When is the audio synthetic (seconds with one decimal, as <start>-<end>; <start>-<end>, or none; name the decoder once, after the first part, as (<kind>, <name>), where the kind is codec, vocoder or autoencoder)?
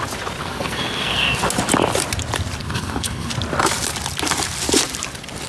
0.4-1.4 (codec, SNAC); 2.6-3.3